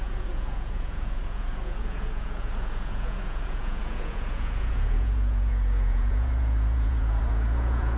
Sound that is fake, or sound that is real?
fake